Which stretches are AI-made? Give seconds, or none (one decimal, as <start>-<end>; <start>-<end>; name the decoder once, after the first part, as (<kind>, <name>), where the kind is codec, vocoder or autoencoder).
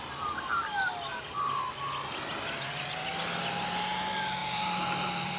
2.3-3.1 (vocoder, BigVGAN v2); 4.4-5.4